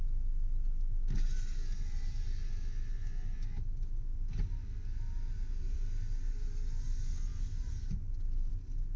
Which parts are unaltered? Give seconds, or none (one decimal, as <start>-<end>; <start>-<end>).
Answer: 0.0-9.0